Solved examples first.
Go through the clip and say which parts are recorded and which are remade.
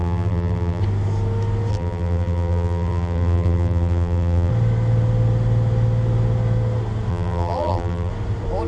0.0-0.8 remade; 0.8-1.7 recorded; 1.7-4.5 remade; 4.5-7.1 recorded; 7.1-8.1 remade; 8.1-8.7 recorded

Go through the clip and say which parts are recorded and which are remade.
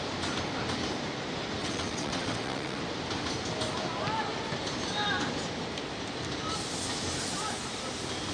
0.0-1.6 recorded; 1.6-2.8 remade; 2.8-8.3 recorded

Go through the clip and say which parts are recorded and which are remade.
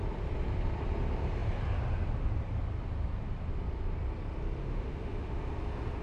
0.0-4.6 recorded; 4.6-5.4 remade; 5.4-6.0 recorded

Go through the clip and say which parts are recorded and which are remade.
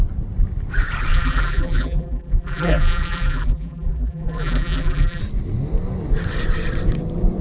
0.0-1.1 recorded; 1.1-5.2 remade; 5.2-7.4 recorded